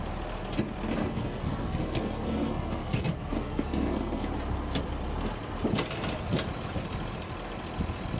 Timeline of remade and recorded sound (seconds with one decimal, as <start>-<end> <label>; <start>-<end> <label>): 0.0-1.0 recorded; 1.0-4.3 remade; 4.3-8.2 recorded